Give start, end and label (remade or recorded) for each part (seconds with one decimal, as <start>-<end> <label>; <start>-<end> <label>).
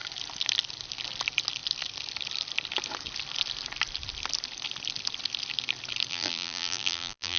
0.0-6.1 recorded; 6.1-7.4 remade